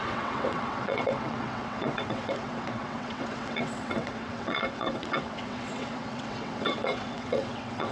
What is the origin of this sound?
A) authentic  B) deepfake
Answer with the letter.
B